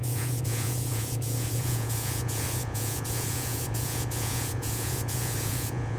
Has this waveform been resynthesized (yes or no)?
yes